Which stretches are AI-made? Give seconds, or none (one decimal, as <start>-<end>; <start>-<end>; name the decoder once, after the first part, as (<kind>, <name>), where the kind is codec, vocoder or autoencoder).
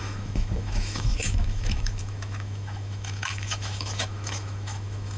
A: 0.0-5.2 (autoencoder, DAC-VAE)